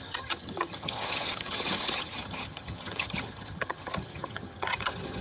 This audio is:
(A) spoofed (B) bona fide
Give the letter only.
A